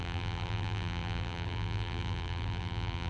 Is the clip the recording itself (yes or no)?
no